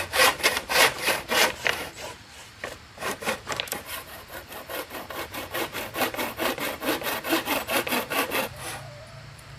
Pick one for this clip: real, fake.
fake